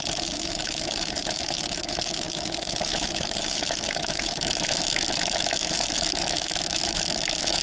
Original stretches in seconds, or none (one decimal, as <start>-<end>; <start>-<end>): none